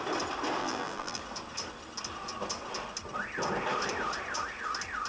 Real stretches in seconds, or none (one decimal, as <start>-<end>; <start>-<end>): 0.0-0.6; 1.2-5.1